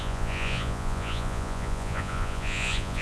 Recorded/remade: remade